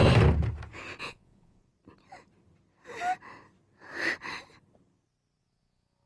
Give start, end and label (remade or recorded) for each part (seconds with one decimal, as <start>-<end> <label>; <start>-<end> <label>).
0.0-1.0 recorded; 1.0-1.7 remade; 1.7-5.4 recorded; 5.4-6.1 remade